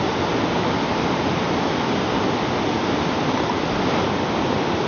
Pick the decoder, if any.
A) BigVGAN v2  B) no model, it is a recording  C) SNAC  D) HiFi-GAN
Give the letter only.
B